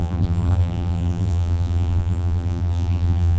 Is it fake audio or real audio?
fake